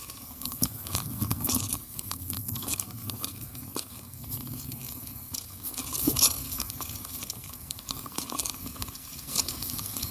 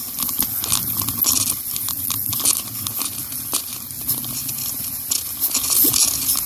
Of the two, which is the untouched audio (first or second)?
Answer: second